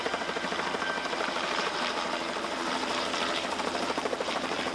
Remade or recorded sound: remade